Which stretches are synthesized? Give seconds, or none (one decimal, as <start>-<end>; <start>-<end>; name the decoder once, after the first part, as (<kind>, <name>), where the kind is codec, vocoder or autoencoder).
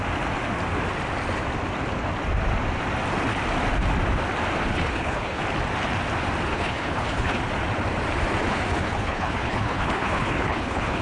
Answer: 4.7-5.4 (codec, HILCodec); 6.5-7.4; 8.7-11.0